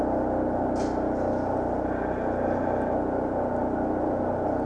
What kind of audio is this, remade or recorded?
recorded